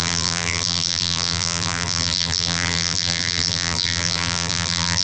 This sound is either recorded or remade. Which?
remade